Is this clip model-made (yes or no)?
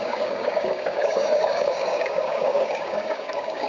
yes